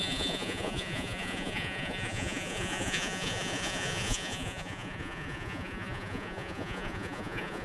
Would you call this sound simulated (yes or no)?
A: yes